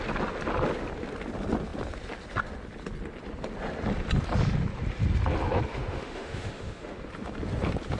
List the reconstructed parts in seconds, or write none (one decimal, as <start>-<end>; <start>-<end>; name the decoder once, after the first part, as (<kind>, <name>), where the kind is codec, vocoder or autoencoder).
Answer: 5.7-7.0 (autoencoder, DAC-VAE)